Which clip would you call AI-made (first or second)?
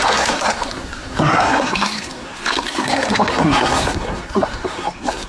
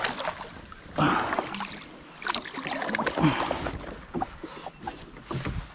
first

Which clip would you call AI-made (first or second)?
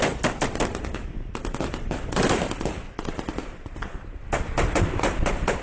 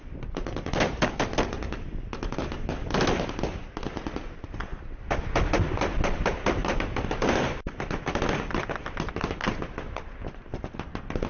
first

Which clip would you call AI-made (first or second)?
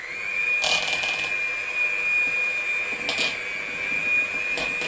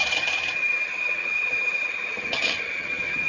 second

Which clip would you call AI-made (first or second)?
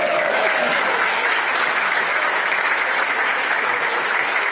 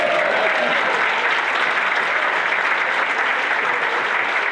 first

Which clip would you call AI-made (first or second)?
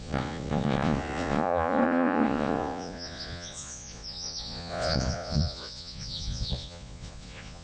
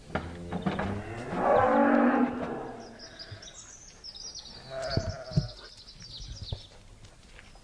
first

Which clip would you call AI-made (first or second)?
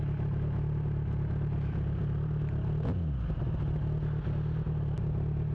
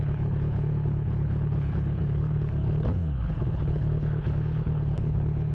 second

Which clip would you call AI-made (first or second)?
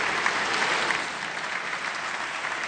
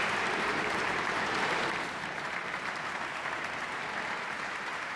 second